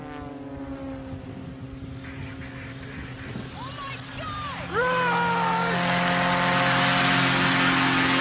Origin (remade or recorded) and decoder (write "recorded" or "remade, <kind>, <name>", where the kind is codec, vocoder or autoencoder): recorded